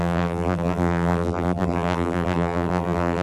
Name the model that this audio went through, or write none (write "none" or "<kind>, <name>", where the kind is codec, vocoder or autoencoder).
vocoder, BigVGAN v2